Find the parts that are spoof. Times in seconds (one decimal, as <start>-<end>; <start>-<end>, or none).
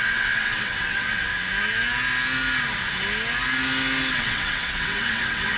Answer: 0.0-1.3; 4.1-5.6